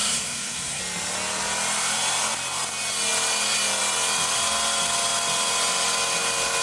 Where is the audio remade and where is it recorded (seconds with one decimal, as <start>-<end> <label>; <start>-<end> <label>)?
0.0-0.8 remade; 0.8-6.6 recorded